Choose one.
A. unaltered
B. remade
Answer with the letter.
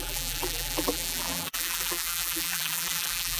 B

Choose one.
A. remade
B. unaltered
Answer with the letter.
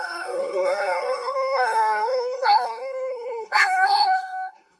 A